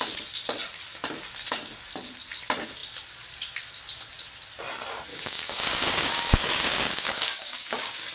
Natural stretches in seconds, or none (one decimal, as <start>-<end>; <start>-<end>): 0.0-5.1